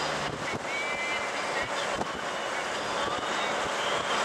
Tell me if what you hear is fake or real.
real